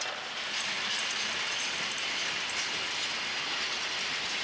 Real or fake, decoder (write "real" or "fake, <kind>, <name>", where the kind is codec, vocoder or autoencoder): real